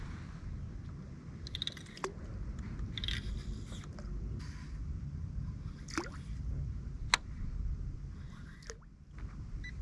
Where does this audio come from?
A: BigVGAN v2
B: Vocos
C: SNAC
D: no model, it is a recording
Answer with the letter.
D